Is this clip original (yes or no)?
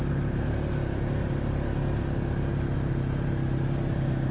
yes